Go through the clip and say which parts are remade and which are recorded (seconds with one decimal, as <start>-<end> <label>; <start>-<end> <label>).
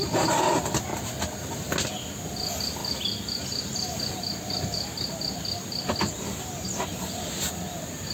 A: 0.0-8.1 recorded